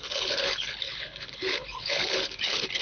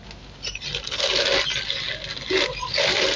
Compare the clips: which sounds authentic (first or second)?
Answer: second